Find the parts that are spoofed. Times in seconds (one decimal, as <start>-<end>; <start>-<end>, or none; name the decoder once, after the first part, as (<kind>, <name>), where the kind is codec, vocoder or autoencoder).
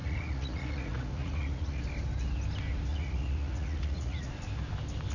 0.0-1.8 (vocoder, Vocos); 2.9-4.3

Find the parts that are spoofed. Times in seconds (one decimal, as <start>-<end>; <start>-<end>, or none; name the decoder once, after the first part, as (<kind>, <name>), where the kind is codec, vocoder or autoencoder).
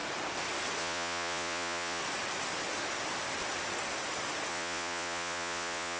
0.8-2.0 (vocoder, Vocos); 4.5-6.0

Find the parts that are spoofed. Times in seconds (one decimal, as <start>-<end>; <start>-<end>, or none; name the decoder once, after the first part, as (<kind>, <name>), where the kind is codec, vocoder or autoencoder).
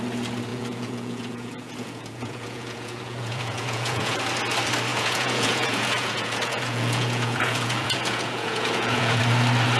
0.5-4.2 (vocoder, Vocos); 4.9-9.2